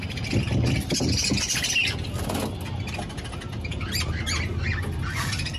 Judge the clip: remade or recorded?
recorded